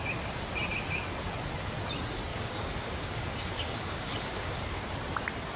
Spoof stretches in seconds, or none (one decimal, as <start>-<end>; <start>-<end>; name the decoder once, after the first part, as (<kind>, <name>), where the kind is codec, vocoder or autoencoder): 2.3-4.8 (codec, DAC)

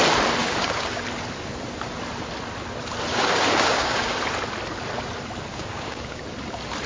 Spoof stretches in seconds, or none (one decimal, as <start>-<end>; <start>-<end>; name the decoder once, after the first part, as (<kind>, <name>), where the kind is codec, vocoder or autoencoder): 0.4-1.0 (codec, DAC); 3.1-4.2; 5.5-6.2

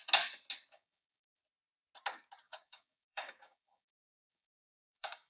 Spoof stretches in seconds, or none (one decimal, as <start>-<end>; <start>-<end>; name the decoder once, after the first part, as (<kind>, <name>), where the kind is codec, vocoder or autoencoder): 0.7-1.4 (codec, DAC); 2.4-5.3

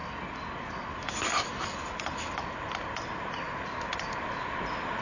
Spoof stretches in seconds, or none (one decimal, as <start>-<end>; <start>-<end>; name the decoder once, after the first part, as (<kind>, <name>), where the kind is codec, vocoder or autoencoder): none

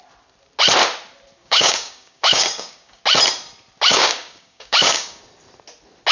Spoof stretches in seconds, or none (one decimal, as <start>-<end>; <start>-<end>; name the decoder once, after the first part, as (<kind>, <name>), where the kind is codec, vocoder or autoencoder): 1.4-3.0 (codec, DAC); 3.9-5.2